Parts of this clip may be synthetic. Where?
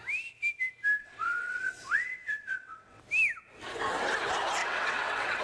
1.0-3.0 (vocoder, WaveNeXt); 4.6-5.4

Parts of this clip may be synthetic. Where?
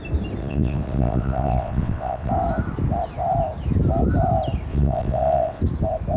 0.4-2.3 (vocoder, WaveNeXt); 4.7-5.6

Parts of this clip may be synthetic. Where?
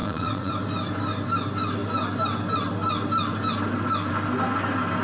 0.0-0.5 (vocoder, WaveNeXt)